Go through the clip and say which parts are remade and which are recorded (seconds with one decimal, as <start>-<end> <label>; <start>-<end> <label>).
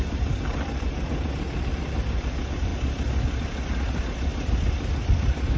0.0-5.6 recorded